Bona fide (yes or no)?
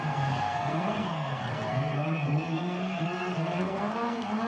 no